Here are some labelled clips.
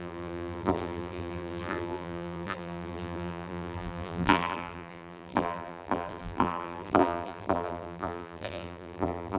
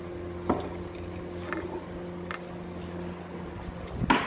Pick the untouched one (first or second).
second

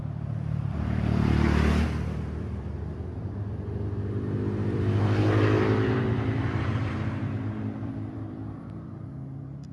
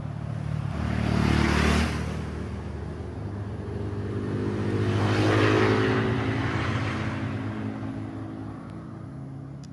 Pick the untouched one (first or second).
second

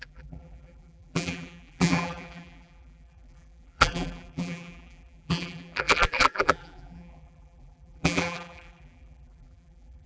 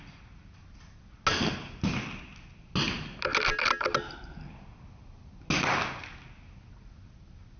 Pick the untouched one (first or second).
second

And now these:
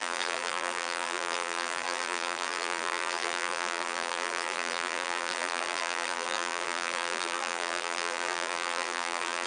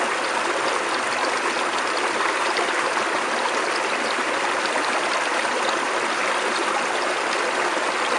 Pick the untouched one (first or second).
second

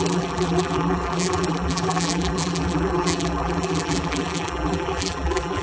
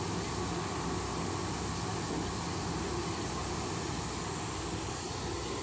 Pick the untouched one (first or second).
second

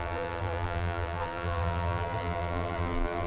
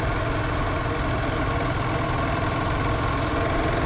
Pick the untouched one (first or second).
second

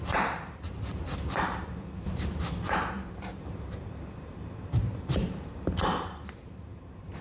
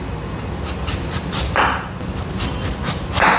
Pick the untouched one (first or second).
second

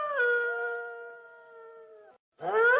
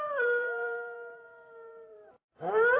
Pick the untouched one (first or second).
first